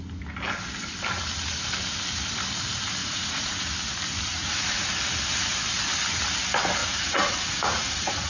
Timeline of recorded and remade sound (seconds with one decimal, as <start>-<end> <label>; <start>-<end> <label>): 0.0-3.0 recorded; 3.0-3.7 remade; 3.7-4.3 recorded; 4.3-4.9 remade; 4.9-6.8 recorded; 6.8-8.3 remade